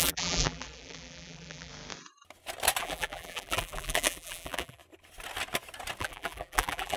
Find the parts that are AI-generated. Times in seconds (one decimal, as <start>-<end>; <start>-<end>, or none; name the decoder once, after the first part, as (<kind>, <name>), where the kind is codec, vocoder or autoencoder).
0.0-1.7 (vocoder, BigVGAN v2); 2.8-4.8; 6.0-7.0